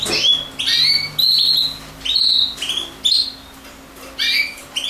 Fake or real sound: real